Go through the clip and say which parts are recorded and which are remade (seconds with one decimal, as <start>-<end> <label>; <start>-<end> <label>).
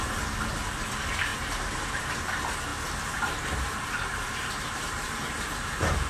0.0-1.3 recorded; 1.3-2.0 remade; 2.0-2.7 recorded; 2.7-6.1 remade